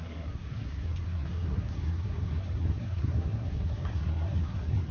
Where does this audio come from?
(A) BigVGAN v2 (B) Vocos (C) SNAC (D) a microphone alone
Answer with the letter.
C